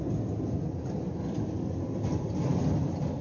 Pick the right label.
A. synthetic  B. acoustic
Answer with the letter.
B